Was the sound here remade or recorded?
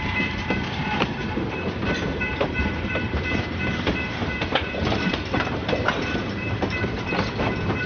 remade